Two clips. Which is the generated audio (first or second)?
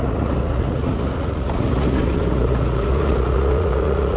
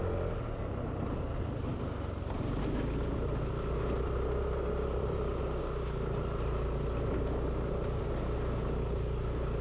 first